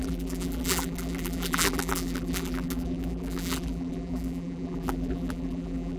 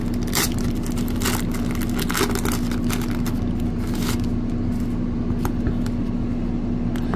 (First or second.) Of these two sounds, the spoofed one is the first